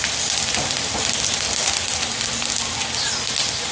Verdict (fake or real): real